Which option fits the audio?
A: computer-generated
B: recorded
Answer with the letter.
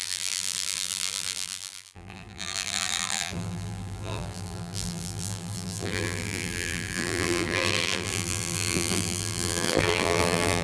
A